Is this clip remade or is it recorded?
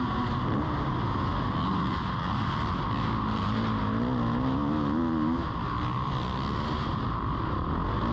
recorded